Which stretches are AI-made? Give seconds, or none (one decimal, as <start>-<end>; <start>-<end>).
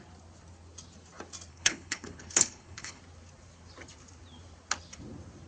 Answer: 1.5-3.0